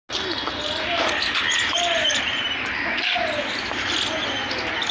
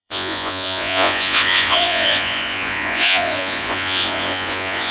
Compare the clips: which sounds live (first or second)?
first